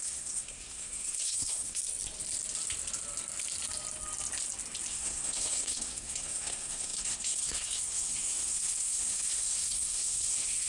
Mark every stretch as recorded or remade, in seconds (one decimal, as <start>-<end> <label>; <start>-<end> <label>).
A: 0.0-1.8 remade; 1.8-4.9 recorded; 4.9-10.7 remade